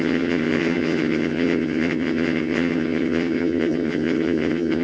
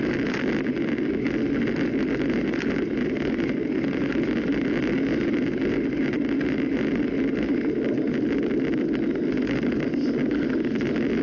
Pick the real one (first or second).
second